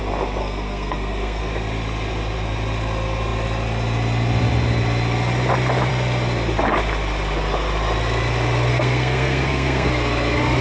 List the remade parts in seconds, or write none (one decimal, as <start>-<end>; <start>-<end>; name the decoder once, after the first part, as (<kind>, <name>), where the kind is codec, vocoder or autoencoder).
0.4-1.4 (codec, SNAC); 8.7-9.9